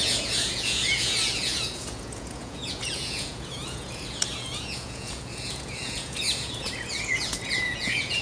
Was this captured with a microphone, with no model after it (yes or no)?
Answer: no